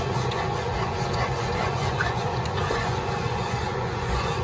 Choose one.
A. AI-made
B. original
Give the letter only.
A